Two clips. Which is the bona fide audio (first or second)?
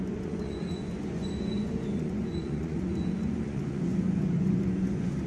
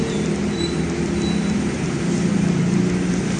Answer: second